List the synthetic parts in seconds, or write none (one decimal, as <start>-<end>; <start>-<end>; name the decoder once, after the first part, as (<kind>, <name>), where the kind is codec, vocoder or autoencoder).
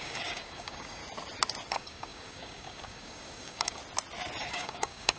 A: 0.0-1.0 (codec, DAC); 1.7-3.8; 4.4-5.2